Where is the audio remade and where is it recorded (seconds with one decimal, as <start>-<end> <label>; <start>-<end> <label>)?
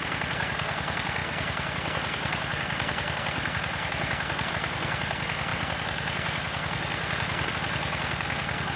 0.0-8.8 remade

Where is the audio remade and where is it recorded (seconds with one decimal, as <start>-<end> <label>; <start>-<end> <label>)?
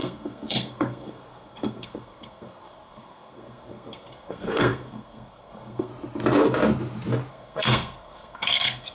0.0-5.9 remade; 5.9-7.3 recorded; 7.3-8.9 remade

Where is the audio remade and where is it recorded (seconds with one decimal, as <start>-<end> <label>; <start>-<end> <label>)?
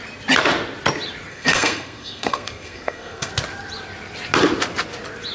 0.0-1.3 recorded; 1.3-3.3 remade; 3.3-5.3 recorded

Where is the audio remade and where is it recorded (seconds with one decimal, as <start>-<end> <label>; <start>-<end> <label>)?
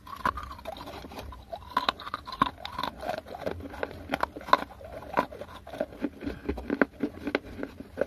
0.0-8.1 recorded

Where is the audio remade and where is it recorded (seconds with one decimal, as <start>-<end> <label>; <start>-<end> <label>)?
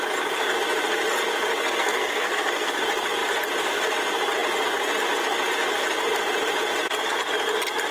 0.0-1.8 recorded; 1.8-2.7 remade; 2.7-7.9 recorded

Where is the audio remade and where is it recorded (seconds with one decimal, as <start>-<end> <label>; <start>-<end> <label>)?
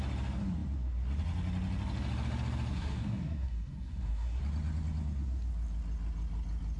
0.0-2.7 recorded; 2.7-4.4 remade; 4.4-6.8 recorded